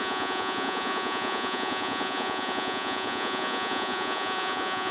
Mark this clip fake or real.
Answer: fake